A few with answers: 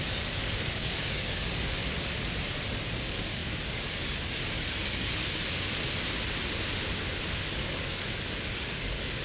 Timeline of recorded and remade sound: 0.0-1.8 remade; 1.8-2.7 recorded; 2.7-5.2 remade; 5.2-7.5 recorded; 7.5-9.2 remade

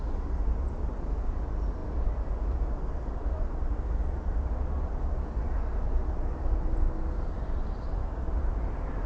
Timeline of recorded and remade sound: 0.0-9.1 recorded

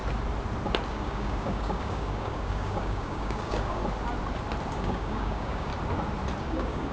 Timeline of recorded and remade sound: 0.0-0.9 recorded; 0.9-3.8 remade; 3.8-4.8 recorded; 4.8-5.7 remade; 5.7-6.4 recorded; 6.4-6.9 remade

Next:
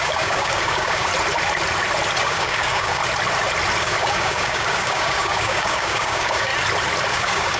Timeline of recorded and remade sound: 0.0-1.1 remade; 1.1-2.2 recorded; 2.2-3.0 remade; 3.0-3.8 recorded; 3.8-6.5 remade; 6.5-7.1 recorded; 7.1-7.6 remade